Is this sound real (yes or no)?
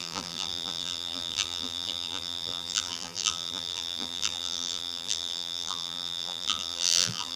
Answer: no